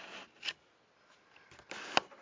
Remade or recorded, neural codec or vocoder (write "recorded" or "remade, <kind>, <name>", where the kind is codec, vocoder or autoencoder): recorded